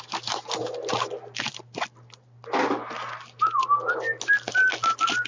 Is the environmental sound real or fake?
real